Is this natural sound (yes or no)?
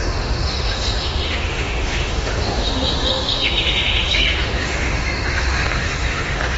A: no